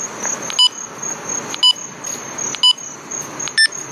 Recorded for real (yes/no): yes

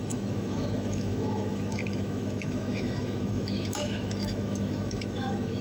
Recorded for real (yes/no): no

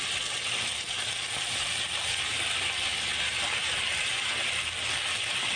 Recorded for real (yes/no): yes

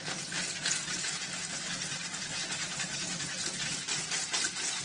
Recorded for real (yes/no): yes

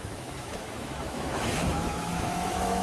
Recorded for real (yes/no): no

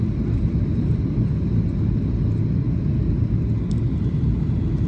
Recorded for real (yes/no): yes